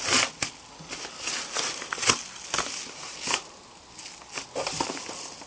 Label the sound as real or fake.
real